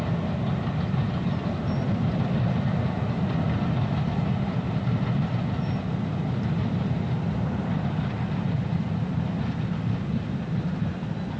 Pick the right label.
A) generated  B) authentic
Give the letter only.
B